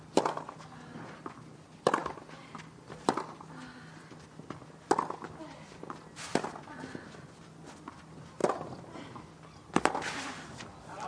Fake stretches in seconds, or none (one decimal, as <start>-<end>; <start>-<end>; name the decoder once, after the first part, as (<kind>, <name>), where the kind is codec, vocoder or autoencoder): none